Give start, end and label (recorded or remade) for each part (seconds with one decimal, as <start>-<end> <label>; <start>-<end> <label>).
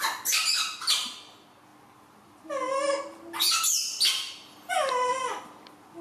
0.0-6.0 recorded